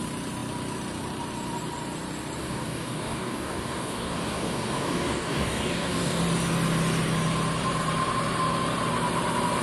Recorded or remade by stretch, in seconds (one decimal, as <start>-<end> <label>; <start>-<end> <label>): 0.0-2.4 recorded; 2.4-6.2 remade; 6.2-9.6 recorded